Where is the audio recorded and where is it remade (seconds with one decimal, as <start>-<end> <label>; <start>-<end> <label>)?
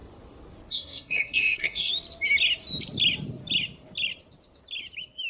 0.0-0.7 recorded; 0.7-1.9 remade; 1.9-5.3 recorded